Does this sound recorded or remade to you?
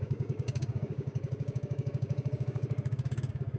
remade